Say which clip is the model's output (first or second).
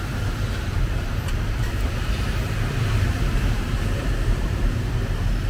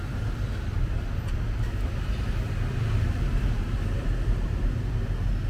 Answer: first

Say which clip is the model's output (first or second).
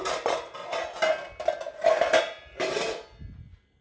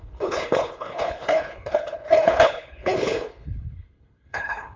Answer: second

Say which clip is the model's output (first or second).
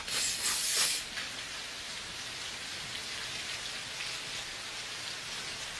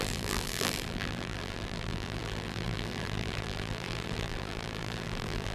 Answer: second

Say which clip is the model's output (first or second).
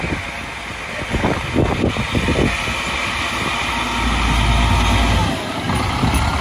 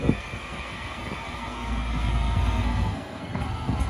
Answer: second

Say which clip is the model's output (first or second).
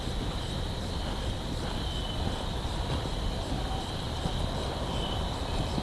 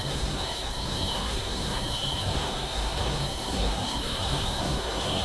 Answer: second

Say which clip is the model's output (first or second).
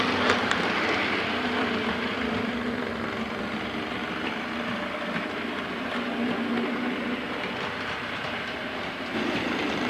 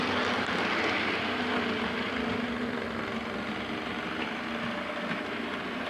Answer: first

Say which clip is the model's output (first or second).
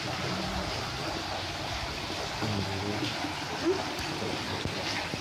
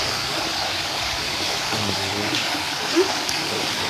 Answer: second